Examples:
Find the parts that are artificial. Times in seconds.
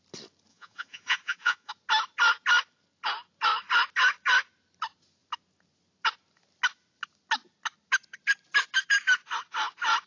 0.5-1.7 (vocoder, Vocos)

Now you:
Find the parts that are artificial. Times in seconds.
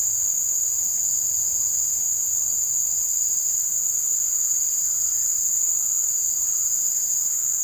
3.0-6.8 (vocoder, BigVGAN v2)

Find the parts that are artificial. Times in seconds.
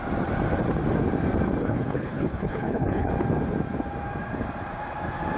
1.6-3.1 (codec, HILCodec)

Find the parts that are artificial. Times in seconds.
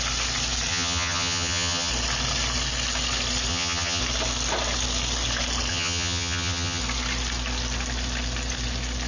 0.7-1.9 (vocoder, HiFi-GAN); 3.5-4.0; 5.7-6.8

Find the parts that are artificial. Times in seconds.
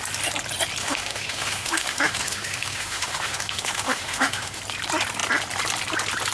0.8-4.6 (autoencoder, DAC-VAE)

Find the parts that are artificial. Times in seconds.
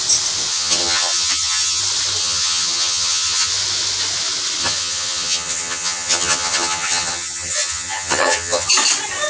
0.5-1.8 (vocoder, HiFi-GAN); 2.2-3.5; 4.6-8.7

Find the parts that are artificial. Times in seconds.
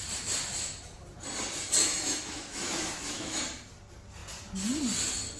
1.8-3.4 (autoencoder, DAC-VAE)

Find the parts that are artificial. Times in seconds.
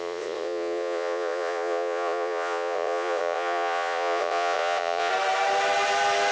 0.0-5.1 (vocoder, Vocos)